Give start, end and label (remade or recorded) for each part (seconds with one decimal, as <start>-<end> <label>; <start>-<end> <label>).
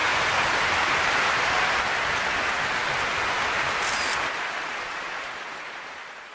0.0-1.5 remade; 1.5-6.3 recorded